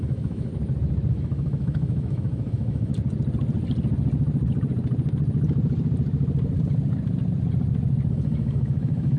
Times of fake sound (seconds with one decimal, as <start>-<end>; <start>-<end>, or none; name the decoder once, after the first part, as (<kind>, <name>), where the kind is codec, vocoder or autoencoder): 0.0-0.5 (autoencoder, DAC-VAE); 1.1-2.9; 8.1-9.2